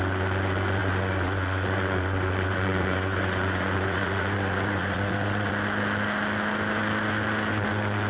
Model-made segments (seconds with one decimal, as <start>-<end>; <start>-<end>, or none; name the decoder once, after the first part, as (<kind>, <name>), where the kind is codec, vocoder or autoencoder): 0.8-5.5 (vocoder, Vocos)